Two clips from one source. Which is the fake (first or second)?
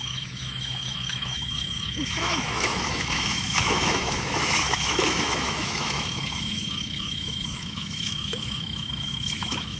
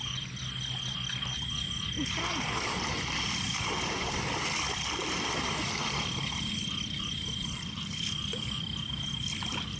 first